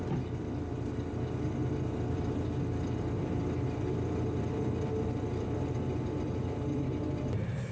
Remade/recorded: remade